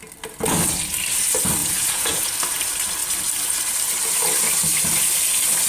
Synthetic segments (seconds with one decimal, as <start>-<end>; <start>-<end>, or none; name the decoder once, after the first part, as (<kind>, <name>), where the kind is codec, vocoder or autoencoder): 1.6-2.3 (vocoder, Vocos)